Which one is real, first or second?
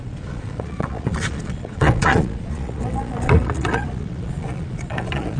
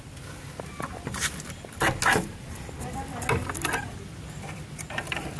second